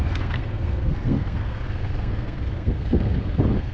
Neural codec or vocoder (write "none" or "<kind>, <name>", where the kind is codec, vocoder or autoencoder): codec, SNAC